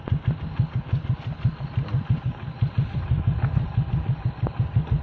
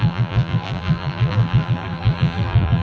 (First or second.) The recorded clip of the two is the first